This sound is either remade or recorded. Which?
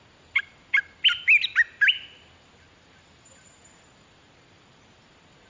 recorded